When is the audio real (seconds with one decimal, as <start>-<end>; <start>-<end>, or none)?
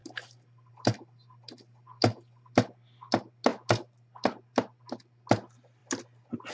0.0-6.5